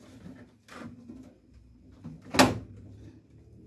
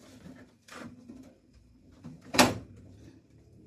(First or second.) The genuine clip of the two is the first